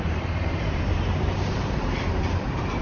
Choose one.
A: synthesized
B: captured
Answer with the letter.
A